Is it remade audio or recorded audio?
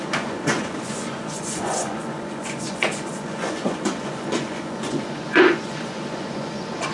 remade